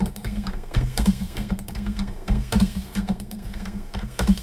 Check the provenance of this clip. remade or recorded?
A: remade